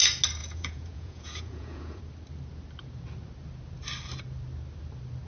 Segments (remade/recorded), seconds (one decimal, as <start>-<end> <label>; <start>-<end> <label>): 0.0-0.4 recorded; 0.4-2.0 remade; 2.0-5.3 recorded